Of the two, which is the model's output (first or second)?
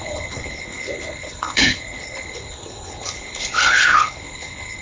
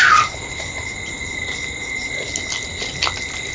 first